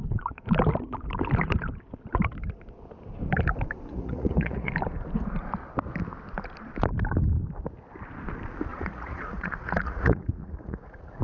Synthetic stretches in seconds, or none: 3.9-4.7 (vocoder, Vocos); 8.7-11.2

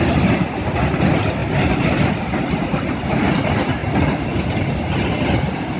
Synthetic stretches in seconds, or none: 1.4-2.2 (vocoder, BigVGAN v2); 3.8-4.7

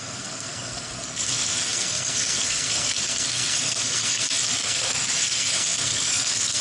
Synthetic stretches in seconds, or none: 0.0-6.6 (codec, SNAC)